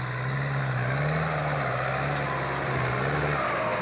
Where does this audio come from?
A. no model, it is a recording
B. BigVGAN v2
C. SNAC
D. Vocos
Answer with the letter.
A